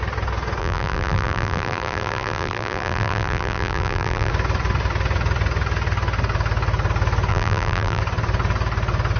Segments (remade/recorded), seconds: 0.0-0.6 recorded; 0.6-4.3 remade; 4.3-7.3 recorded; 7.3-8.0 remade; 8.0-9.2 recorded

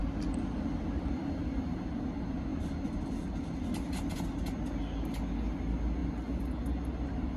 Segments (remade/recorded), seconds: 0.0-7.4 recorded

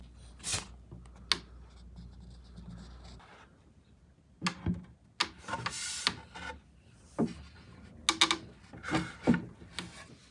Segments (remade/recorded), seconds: 0.0-10.3 recorded

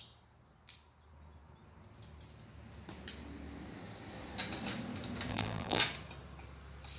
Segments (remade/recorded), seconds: 0.0-5.3 recorded; 5.3-5.8 remade; 5.8-7.0 recorded

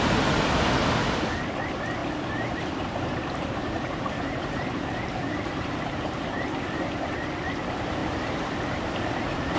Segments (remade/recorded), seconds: 0.0-2.0 recorded; 2.0-6.6 remade; 6.6-9.6 recorded

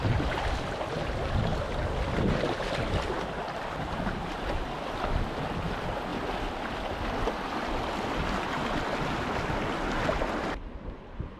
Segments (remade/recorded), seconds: 0.0-11.4 recorded